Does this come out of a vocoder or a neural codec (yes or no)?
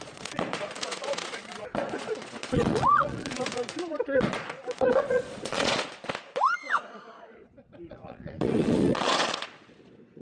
yes